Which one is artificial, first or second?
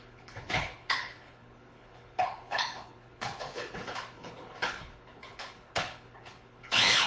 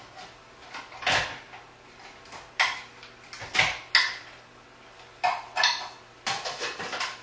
first